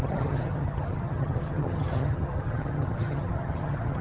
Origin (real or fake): fake